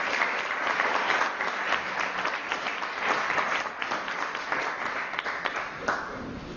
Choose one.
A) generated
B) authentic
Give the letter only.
B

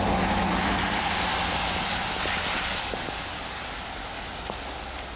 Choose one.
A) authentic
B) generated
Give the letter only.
A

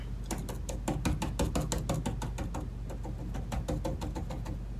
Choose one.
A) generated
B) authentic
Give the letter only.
B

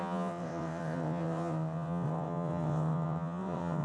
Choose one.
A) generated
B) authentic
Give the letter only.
A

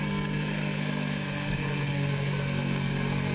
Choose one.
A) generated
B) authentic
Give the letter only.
A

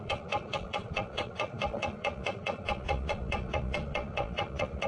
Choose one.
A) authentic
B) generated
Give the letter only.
B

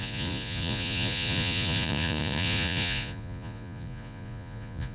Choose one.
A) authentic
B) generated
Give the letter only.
B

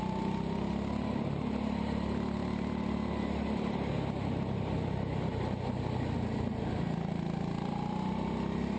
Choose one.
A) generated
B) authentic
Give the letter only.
B